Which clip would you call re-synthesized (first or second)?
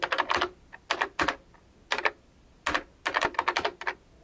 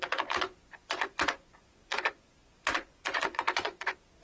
second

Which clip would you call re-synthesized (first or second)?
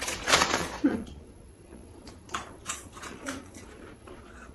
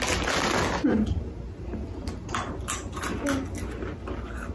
first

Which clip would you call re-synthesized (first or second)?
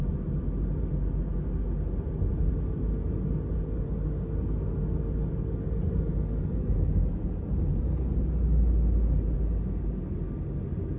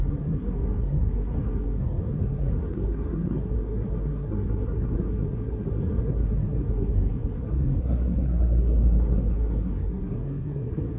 second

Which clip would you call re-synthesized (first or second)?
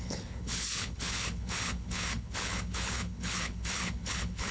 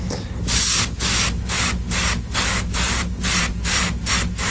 first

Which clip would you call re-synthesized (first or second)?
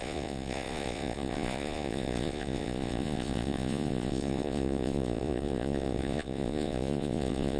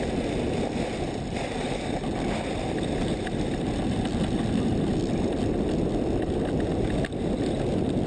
first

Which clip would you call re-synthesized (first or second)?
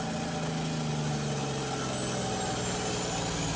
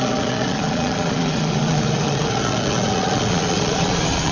second